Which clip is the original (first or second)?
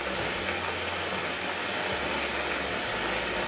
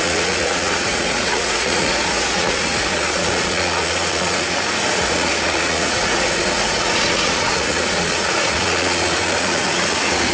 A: first